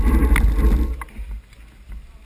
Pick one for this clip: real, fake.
real